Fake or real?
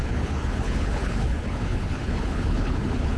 fake